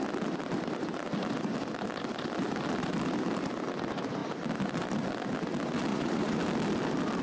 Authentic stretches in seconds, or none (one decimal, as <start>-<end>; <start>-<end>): 0.0-5.9; 6.4-7.2